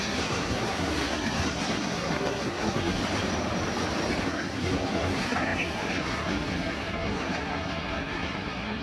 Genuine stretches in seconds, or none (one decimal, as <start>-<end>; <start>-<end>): 3.0-4.2